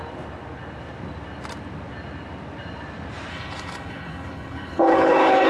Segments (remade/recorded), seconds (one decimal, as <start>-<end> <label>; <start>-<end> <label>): 0.0-3.3 recorded; 3.3-5.5 remade